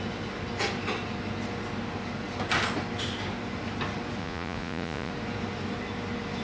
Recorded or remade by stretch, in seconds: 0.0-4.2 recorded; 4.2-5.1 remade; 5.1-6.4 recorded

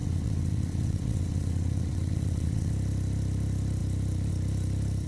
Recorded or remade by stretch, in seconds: 0.0-2.7 remade; 2.7-5.1 recorded

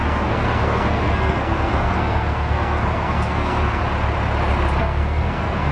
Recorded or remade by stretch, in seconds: 0.0-3.8 remade; 3.8-4.8 recorded; 4.8-5.7 remade

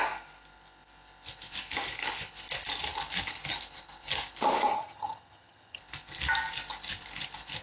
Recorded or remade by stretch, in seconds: 0.0-4.7 recorded; 4.7-5.8 remade; 5.8-7.6 recorded

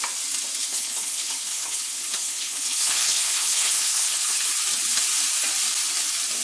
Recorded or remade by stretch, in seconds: 0.0-0.6 recorded; 0.6-4.4 remade; 4.4-6.4 recorded

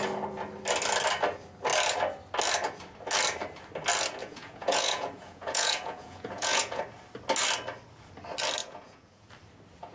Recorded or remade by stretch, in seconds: 0.0-4.2 recorded; 4.2-6.8 remade; 6.8-8.6 recorded; 8.6-9.3 remade; 9.3-9.9 recorded

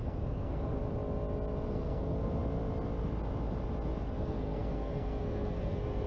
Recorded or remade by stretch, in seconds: 0.0-0.8 remade; 0.8-1.7 recorded; 1.7-2.4 remade; 2.4-4.0 recorded; 4.0-6.1 remade